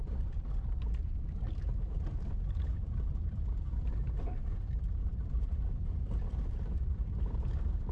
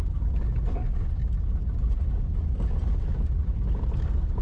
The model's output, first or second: first